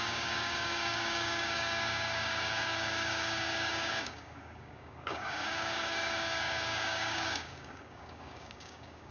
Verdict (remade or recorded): remade